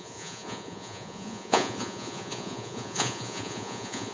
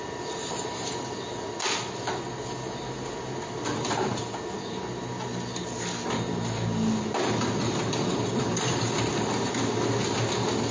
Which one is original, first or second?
second